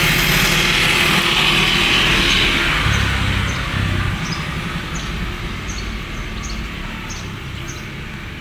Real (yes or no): yes